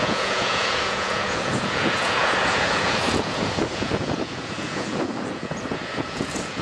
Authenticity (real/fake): fake